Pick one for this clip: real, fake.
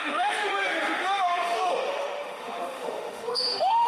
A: fake